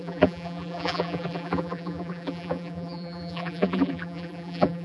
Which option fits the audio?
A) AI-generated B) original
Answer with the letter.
A